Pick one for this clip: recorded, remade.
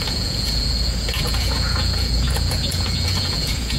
remade